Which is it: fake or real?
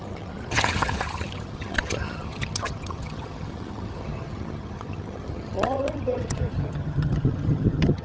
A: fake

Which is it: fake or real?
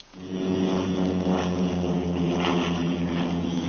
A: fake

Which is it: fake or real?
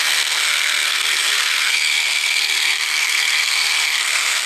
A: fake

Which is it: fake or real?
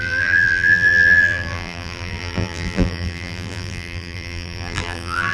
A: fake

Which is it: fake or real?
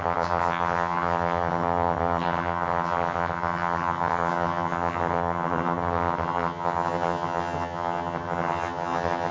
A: fake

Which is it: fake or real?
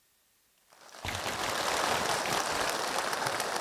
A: real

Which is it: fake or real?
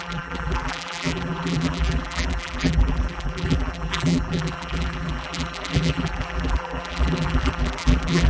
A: fake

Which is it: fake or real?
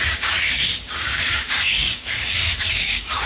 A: fake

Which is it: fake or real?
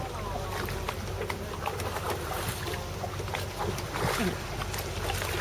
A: real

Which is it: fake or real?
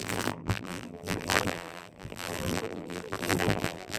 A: fake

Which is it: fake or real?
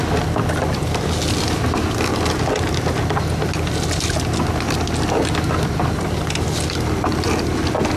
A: real